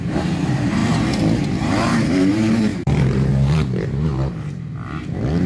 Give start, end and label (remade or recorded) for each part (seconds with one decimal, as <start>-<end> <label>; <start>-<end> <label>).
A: 0.0-0.8 remade; 0.8-1.5 recorded; 1.5-4.1 remade; 4.1-5.5 recorded